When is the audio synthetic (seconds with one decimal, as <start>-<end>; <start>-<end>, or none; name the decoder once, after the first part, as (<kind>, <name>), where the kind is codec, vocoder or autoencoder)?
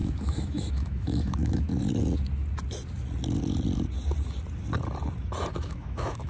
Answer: 0.0-1.7 (autoencoder, DAC-VAE); 5.5-6.3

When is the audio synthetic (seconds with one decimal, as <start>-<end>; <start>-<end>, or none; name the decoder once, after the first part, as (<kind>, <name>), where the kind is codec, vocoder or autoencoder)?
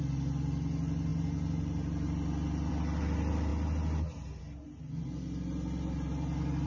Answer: none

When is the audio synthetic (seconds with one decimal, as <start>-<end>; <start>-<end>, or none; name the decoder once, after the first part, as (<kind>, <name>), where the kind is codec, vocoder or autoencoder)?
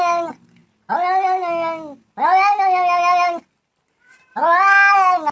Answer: none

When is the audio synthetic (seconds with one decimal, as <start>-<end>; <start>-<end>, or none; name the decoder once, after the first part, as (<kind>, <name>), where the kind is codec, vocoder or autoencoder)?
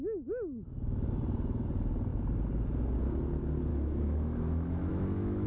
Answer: 3.7-5.5 (autoencoder, DAC-VAE)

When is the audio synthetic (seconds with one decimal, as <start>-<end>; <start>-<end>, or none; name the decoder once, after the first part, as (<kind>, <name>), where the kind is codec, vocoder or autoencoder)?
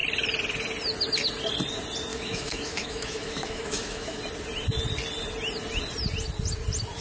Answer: 2.1-4.2 (autoencoder, DAC-VAE)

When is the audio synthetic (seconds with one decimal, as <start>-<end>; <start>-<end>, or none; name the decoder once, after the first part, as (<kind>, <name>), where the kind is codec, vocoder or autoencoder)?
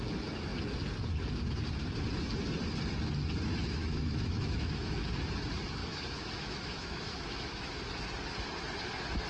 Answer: 3.8-5.0 (autoencoder, DAC-VAE); 5.8-7.8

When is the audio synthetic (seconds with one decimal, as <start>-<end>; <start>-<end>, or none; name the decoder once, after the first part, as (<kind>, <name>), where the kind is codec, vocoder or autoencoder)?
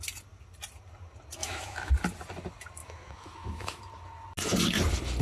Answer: 1.4-1.9 (autoencoder, DAC-VAE); 2.8-3.8